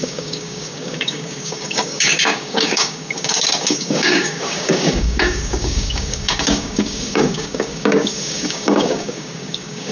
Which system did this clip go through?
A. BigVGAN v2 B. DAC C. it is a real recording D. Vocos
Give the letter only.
B